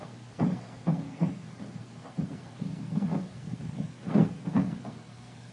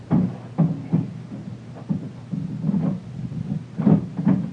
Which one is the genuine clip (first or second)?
second